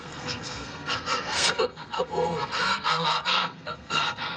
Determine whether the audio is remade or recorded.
remade